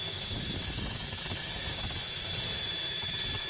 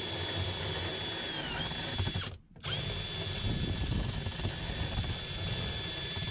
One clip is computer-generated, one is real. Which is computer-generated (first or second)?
first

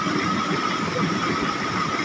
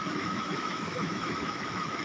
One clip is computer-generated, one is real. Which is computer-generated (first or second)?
second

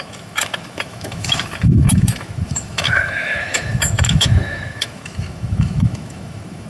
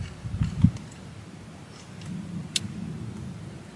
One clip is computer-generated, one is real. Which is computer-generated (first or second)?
first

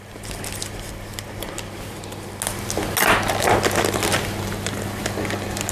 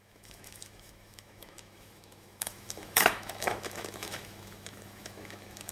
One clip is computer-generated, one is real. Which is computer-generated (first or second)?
second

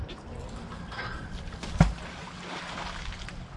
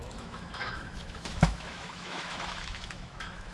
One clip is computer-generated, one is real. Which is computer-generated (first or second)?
second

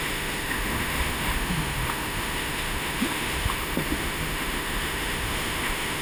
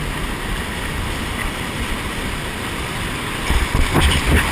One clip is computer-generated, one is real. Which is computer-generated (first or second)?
first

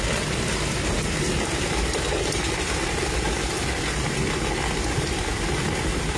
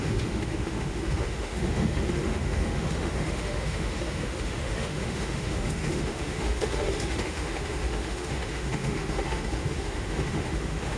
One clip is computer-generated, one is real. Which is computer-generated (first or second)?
second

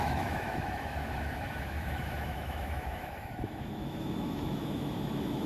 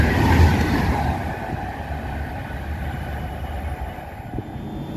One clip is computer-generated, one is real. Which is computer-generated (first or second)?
first